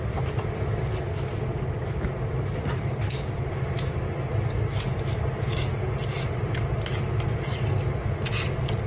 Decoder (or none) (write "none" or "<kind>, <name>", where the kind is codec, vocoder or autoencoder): none